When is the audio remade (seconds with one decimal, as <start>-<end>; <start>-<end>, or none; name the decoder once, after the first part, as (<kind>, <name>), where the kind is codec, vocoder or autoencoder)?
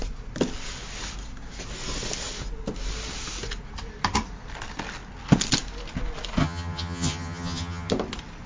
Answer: 6.4-7.9 (vocoder, HiFi-GAN)